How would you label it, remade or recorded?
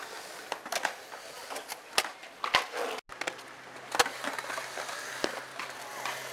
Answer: recorded